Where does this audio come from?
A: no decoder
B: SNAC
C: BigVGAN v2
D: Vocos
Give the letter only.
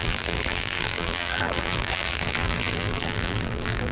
C